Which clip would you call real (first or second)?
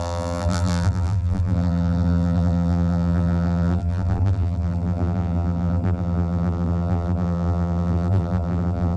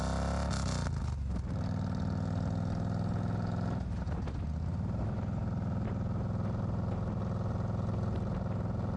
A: second